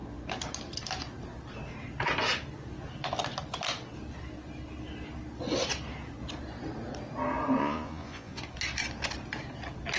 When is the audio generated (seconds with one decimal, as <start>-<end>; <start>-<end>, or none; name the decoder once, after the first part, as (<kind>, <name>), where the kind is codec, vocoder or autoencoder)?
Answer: 7.6-8.4 (vocoder, Vocos)